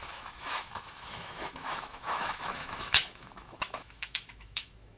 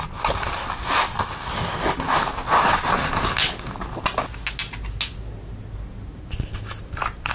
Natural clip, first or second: second